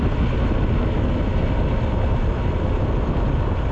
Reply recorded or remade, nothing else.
recorded